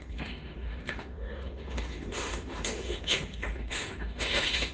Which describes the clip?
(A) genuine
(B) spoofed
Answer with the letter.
B